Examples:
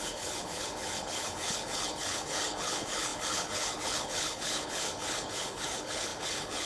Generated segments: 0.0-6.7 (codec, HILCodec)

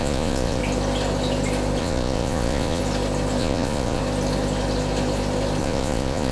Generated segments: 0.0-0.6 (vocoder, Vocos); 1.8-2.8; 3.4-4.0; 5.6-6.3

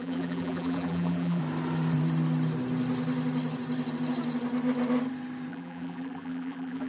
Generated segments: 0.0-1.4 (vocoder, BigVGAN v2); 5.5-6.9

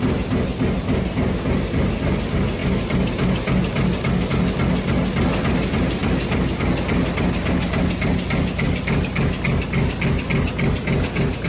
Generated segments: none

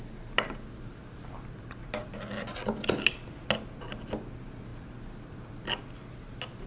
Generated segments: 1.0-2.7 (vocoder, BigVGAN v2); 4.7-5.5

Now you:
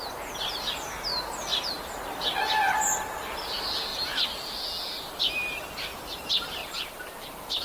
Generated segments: 6.6-7.6 (vocoder, BigVGAN v2)

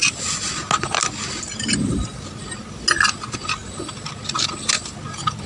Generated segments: none

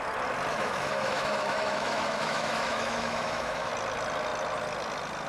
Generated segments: 0.5-3.7 (autoencoder, DAC-VAE)